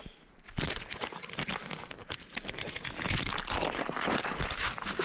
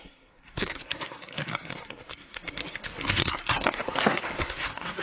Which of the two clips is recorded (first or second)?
first